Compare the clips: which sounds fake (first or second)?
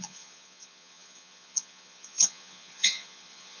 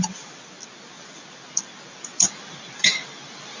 first